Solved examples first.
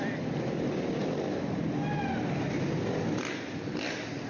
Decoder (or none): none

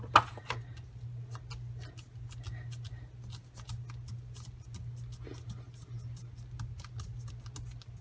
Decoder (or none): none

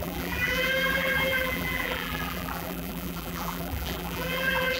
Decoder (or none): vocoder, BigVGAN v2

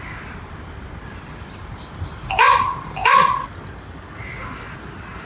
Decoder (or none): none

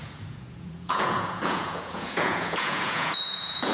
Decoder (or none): vocoder, Vocos